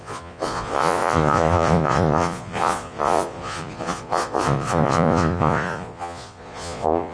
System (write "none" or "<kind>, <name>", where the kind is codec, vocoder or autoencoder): vocoder, Vocos